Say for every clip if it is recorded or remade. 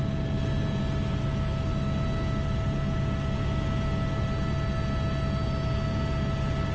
recorded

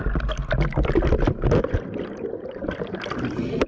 recorded